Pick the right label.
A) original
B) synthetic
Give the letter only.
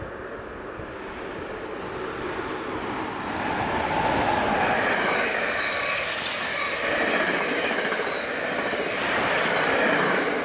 A